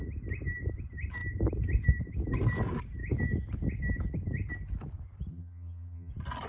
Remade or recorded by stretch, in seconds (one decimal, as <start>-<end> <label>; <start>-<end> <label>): 0.0-5.3 recorded; 5.3-6.1 remade; 6.1-6.5 recorded